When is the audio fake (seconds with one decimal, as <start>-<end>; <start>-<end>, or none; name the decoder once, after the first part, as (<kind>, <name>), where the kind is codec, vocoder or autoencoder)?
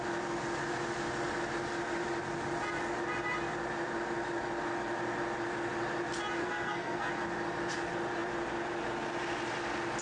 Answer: 6.4-7.1 (codec, SNAC)